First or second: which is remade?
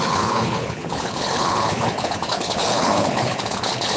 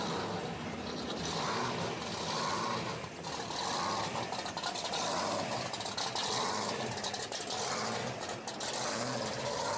first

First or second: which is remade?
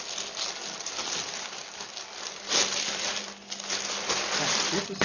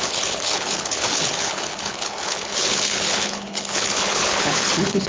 second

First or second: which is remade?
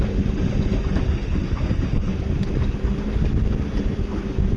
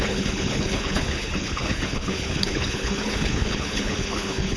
second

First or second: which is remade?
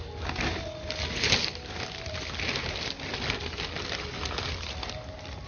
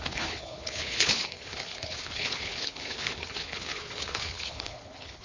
second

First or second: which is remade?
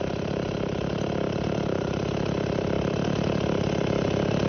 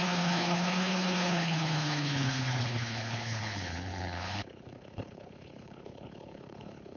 second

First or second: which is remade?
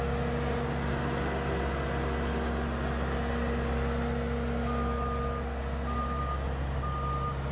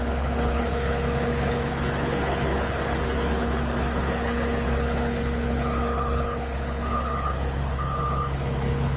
second